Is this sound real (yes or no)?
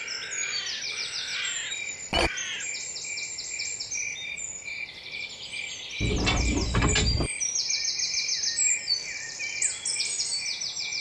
yes